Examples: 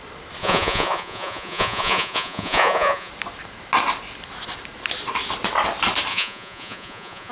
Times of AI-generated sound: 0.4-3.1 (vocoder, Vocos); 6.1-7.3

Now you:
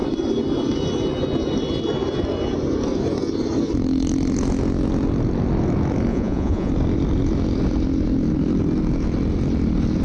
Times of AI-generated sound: 6.1-6.7 (vocoder, Vocos)

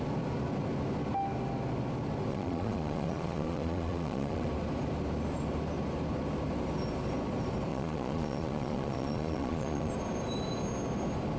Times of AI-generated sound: 2.3-4.5 (vocoder, Vocos); 7.7-9.9

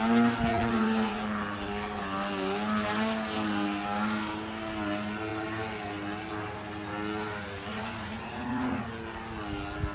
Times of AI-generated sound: 0.5-1.2 (vocoder, Vocos); 7.7-8.9